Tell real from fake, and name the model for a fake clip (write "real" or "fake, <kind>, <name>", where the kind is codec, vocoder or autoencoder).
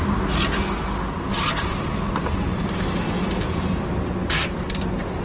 real